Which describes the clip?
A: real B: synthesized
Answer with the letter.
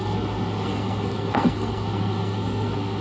B